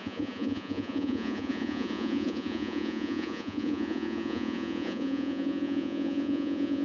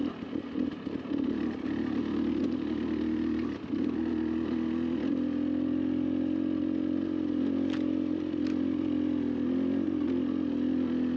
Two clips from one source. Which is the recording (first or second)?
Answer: second